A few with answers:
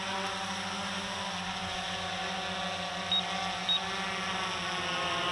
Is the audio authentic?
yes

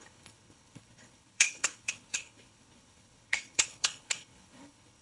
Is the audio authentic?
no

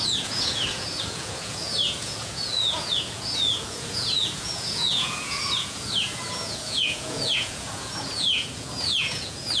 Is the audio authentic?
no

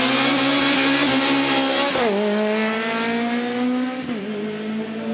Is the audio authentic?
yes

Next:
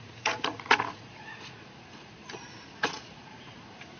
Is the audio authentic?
no